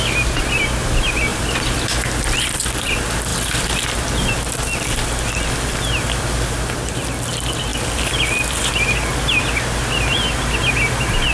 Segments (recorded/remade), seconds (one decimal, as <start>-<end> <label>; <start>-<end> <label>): 0.0-1.3 recorded; 1.3-2.7 remade; 2.7-3.3 recorded; 3.3-4.0 remade; 4.0-7.7 recorded; 7.7-8.7 remade; 8.7-11.3 recorded